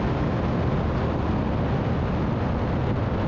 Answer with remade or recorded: recorded